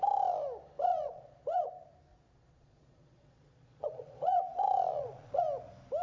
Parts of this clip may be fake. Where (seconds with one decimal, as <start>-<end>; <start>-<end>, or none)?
0.9-1.7; 2.1-5.4